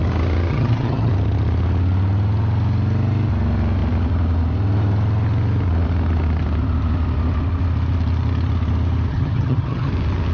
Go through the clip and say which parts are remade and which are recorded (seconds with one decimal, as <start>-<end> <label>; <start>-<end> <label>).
0.0-0.5 recorded; 0.5-1.1 remade; 1.1-9.1 recorded; 9.1-9.9 remade; 9.9-10.3 recorded

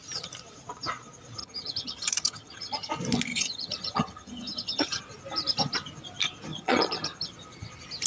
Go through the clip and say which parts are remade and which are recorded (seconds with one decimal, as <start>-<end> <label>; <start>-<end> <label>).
0.0-1.4 recorded; 1.4-2.9 remade; 2.9-3.3 recorded; 3.3-5.0 remade; 5.0-6.5 recorded; 6.5-7.3 remade; 7.3-8.1 recorded

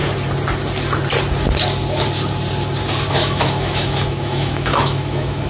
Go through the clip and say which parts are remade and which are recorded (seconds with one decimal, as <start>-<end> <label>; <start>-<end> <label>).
0.0-3.1 recorded; 3.1-5.5 remade

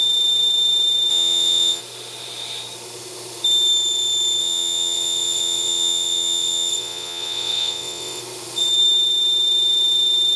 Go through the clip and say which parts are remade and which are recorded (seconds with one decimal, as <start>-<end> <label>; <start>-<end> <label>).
0.0-1.1 recorded; 1.1-1.8 remade; 1.8-4.4 recorded; 4.4-8.2 remade; 8.2-10.4 recorded